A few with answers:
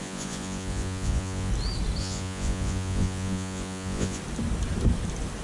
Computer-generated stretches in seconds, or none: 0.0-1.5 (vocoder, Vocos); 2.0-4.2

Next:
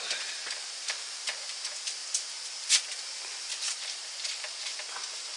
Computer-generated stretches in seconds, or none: none

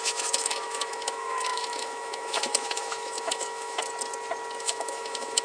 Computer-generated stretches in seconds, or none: 0.0-3.8 (autoencoder, DAC-VAE); 4.6-5.4

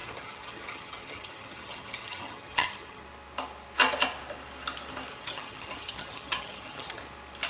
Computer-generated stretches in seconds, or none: 0.0-3.0 (vocoder, HiFi-GAN); 5.1-7.0

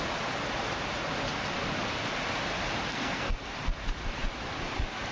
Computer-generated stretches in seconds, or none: 2.9-3.4 (codec, SNAC)

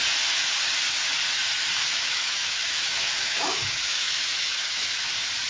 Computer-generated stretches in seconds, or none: 1.8-5.1 (autoencoder, DAC-VAE)

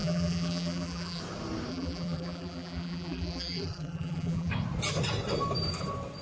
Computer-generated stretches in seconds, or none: 0.0-1.2 (vocoder, BigVGAN v2); 1.7-4.5

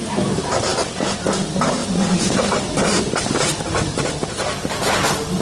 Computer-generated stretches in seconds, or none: 1.8-4.3 (vocoder, BigVGAN v2)